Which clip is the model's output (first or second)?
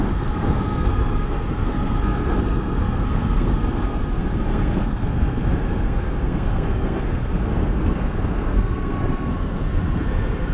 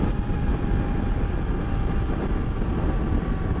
first